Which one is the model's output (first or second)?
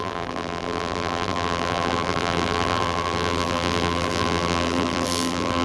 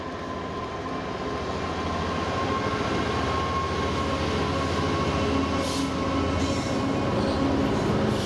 first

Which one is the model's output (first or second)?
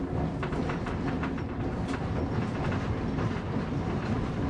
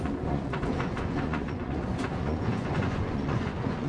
second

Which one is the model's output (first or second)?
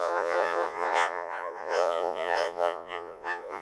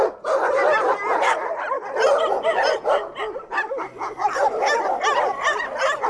first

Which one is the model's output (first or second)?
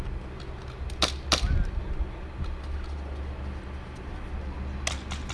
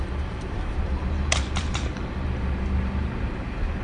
second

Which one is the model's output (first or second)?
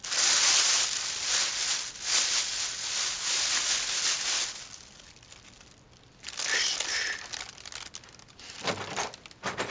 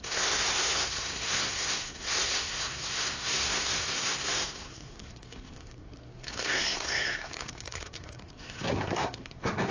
second